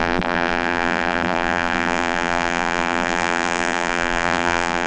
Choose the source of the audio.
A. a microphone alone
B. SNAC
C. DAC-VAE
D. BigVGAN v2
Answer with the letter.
D